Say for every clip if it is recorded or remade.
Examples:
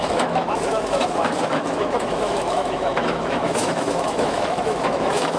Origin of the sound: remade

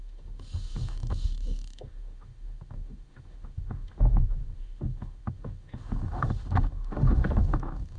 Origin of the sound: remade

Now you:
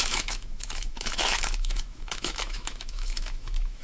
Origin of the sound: remade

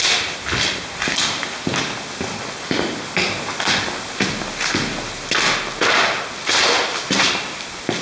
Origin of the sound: recorded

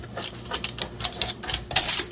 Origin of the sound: recorded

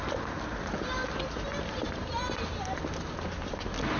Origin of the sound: recorded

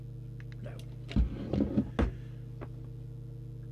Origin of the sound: recorded